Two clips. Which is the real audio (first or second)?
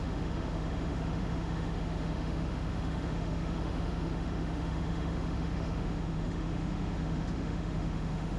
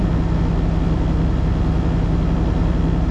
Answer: second